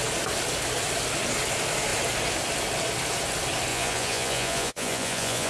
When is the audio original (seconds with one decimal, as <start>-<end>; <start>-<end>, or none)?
0.0-3.7